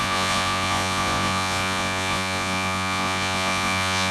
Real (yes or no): no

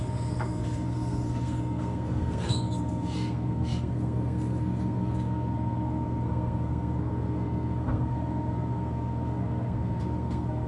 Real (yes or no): no